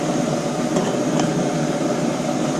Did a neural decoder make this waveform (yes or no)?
no